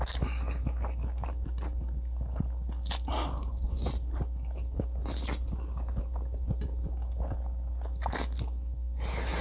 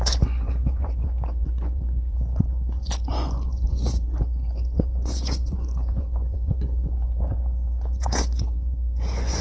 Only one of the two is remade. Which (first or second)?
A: second